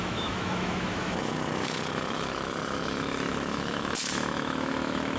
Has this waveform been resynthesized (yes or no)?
yes